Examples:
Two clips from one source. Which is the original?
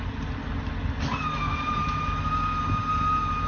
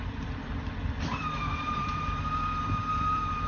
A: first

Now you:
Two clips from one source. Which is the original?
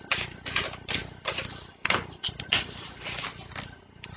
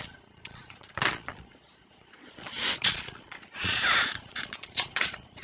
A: first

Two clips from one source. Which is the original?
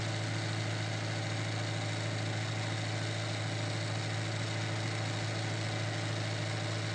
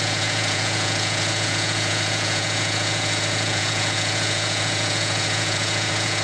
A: first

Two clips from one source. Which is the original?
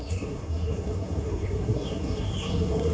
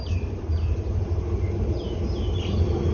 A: second